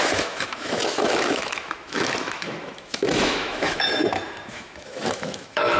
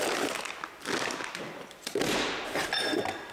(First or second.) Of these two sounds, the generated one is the first